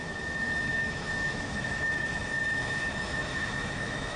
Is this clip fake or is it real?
fake